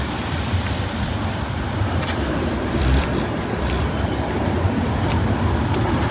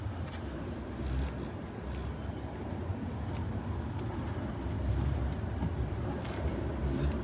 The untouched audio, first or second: second